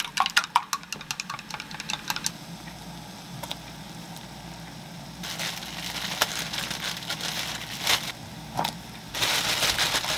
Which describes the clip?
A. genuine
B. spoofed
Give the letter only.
A